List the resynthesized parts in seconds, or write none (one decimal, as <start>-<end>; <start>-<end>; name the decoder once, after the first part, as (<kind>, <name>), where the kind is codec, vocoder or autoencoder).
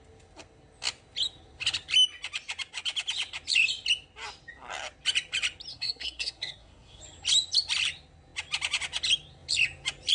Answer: 5.7-7.0 (codec, SNAC)